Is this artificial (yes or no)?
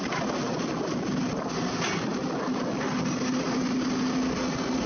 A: no